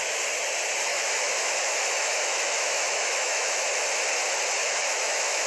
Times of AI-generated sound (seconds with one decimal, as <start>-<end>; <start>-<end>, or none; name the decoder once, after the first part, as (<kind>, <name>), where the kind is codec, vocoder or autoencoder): 0.9-3.9 (autoencoder, DAC-VAE); 4.6-5.5